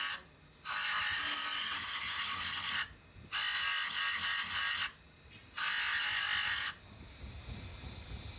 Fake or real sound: real